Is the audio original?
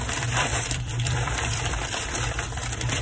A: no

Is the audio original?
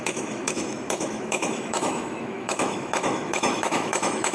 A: no